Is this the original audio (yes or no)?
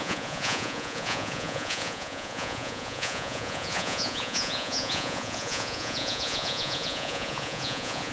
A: no